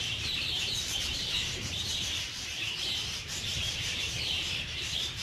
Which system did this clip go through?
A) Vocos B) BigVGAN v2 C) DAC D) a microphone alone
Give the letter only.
B